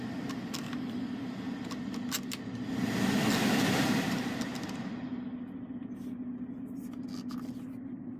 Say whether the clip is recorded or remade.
recorded